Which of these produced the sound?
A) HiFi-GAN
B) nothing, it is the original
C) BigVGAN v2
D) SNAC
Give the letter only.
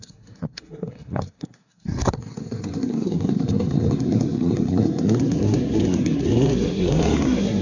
D